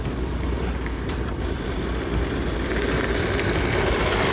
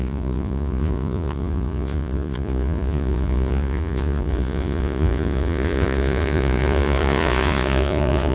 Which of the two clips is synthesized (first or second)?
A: second